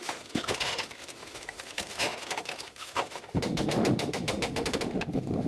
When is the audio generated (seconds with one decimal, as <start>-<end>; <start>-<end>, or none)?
0.0-5.5